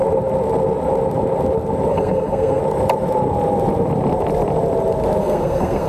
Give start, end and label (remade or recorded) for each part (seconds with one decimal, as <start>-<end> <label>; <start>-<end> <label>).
0.0-1.9 recorded; 1.9-2.6 remade; 2.6-5.2 recorded; 5.2-5.9 remade